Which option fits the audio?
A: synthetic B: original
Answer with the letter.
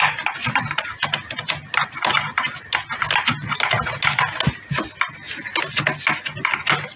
B